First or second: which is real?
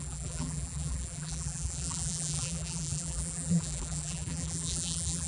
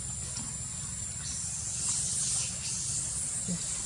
second